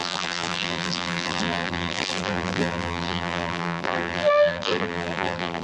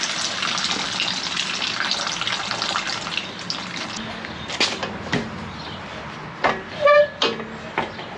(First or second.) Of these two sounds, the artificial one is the first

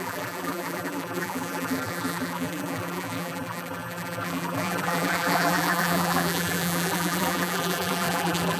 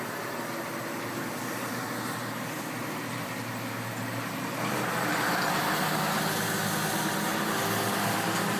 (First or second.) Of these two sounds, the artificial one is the first